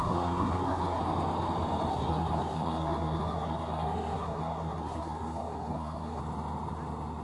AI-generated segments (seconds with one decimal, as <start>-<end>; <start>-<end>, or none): 0.0-1.0; 1.9-6.2